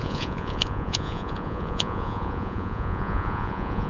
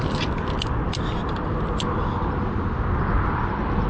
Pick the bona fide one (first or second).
second